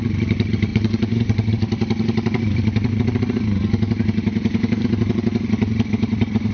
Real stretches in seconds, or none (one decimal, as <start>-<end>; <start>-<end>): 0.0-0.7; 1.5-6.5